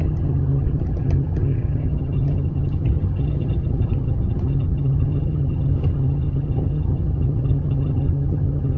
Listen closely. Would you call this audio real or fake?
fake